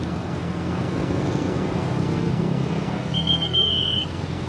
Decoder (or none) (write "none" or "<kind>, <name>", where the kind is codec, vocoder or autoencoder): codec, SNAC